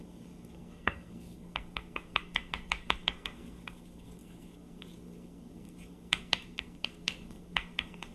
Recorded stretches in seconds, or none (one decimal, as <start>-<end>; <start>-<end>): none